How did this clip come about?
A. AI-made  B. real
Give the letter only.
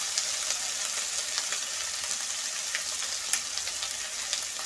B